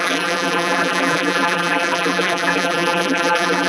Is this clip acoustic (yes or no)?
no